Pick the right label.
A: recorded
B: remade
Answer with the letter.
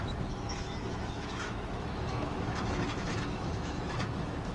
B